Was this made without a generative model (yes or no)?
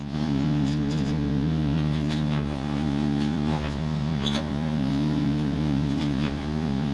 no